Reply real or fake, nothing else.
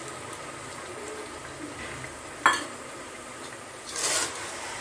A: real